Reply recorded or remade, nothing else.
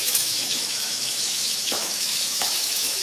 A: remade